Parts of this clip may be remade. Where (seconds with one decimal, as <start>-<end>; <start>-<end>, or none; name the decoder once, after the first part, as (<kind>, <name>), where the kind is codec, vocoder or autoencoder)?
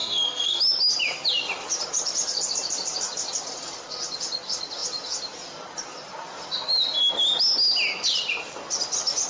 0.0-0.6 (codec, SNAC)